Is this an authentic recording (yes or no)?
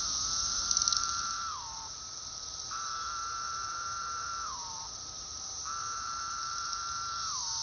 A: no